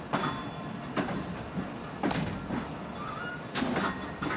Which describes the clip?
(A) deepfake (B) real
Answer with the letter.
B